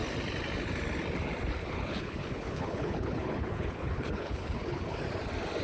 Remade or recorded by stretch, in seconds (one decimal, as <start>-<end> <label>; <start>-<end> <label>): 0.0-1.6 recorded; 1.6-5.0 remade; 5.0-5.6 recorded